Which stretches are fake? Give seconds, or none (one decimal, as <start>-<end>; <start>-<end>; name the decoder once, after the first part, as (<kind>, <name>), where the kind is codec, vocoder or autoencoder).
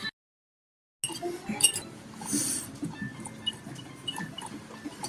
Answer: none